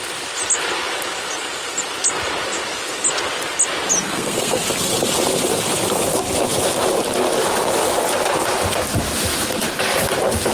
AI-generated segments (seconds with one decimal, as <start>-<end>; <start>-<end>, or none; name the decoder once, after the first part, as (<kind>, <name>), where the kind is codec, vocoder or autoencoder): 4.0-4.6 (codec, SNAC)